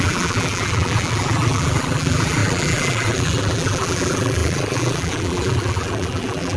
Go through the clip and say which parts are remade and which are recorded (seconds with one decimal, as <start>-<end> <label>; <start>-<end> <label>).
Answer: 0.0-6.6 remade